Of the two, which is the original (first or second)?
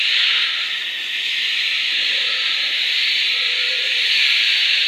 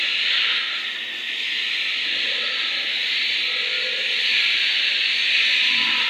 second